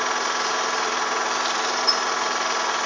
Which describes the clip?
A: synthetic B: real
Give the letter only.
B